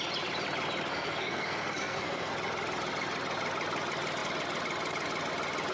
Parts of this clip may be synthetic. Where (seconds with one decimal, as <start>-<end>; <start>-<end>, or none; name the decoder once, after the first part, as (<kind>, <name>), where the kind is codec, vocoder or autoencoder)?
0.9-2.3 (codec, SNAC)